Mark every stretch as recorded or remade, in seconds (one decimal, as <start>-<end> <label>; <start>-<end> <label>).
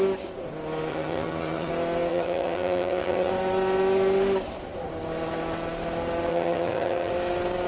0.0-0.9 recorded; 0.9-1.7 remade; 1.7-2.1 recorded; 2.1-3.3 remade; 3.3-6.3 recorded; 6.3-7.1 remade; 7.1-7.7 recorded